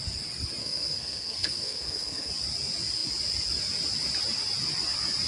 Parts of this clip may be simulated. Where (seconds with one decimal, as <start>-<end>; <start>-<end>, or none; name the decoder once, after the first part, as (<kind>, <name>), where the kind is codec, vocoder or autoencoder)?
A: 0.6-2.3 (codec, SNAC)